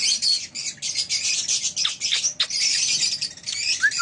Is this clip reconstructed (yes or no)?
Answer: no